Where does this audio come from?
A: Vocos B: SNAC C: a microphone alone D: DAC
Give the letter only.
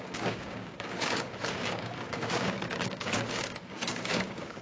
D